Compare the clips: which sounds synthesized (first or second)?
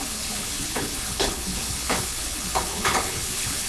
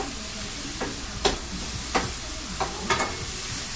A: first